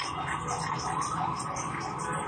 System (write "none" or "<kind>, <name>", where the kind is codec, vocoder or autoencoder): none